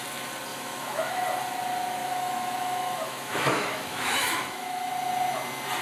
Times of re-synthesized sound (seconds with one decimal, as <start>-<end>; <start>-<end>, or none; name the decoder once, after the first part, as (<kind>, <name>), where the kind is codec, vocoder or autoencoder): 0.5-1.2 (autoencoder, DAC-VAE); 2.0-4.9